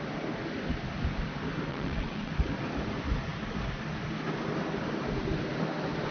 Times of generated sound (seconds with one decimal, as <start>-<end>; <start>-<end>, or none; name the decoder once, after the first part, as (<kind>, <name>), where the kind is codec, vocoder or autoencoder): 1.7-2.3 (vocoder, WaveNeXt)